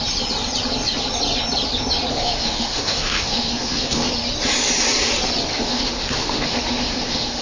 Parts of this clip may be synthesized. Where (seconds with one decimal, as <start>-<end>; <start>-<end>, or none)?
2.1-4.1; 5.5-7.4